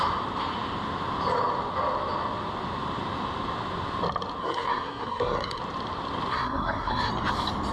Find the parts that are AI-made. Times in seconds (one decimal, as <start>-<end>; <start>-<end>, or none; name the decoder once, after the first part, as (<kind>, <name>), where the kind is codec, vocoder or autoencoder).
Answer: 4.4-5.6 (codec, SNAC); 6.3-7.1